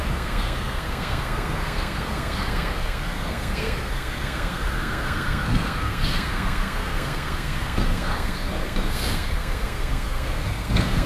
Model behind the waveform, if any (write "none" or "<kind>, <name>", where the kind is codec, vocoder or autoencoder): codec, SNAC